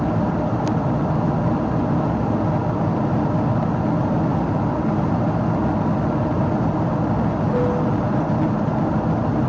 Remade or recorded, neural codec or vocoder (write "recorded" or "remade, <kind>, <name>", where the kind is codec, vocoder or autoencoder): recorded